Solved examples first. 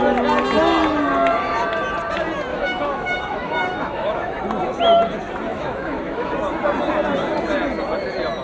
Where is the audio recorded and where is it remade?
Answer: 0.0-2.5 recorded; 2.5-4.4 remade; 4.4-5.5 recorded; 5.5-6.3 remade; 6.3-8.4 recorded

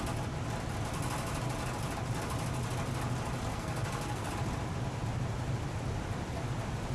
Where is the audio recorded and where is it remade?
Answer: 0.0-3.5 recorded; 3.5-4.3 remade; 4.3-6.9 recorded

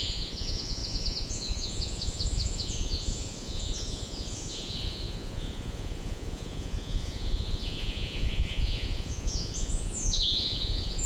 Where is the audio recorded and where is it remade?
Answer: 0.0-11.1 remade

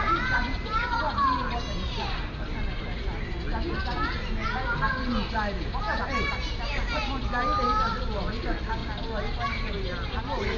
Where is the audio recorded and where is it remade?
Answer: 0.0-10.6 recorded

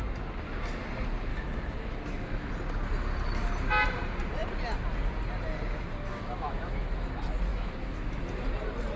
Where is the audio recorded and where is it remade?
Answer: 0.0-1.3 recorded; 1.3-2.5 remade; 2.5-6.1 recorded; 6.1-6.9 remade; 6.9-7.5 recorded; 7.5-8.2 remade; 8.2-9.0 recorded

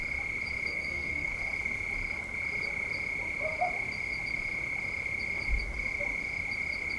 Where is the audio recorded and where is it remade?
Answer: 0.0-0.7 recorded; 0.7-1.3 remade; 1.3-7.0 recorded

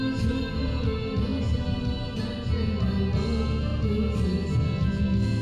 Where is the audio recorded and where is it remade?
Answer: 0.0-5.4 recorded

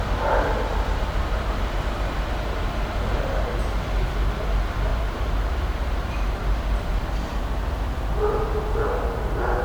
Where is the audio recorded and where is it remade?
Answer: 0.0-0.7 recorded; 0.7-3.5 remade; 3.5-4.9 recorded; 4.9-7.4 remade; 7.4-9.6 recorded